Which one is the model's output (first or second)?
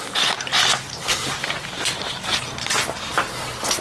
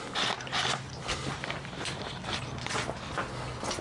first